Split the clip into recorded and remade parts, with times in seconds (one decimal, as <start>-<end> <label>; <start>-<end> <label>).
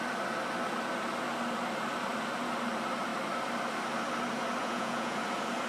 0.0-4.6 recorded; 4.6-5.2 remade; 5.2-5.7 recorded